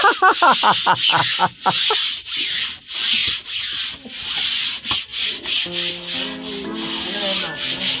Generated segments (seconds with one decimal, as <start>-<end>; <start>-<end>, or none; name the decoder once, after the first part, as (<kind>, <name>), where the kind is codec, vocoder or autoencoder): none